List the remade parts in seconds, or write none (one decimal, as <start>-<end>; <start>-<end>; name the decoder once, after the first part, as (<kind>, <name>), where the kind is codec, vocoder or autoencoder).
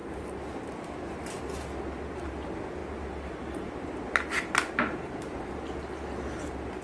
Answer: none